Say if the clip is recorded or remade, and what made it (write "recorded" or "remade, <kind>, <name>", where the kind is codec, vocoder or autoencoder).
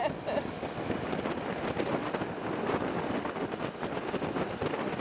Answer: recorded